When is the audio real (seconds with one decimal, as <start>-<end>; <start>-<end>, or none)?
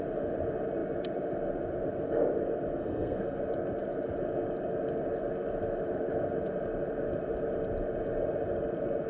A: 0.0-2.8; 3.4-9.1